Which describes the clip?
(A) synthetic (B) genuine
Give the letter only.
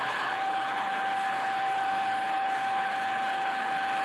A